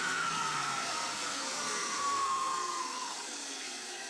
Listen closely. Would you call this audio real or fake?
fake